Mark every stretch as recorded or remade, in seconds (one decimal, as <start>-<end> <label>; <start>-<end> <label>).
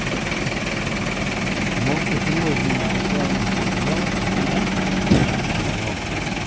0.0-6.5 recorded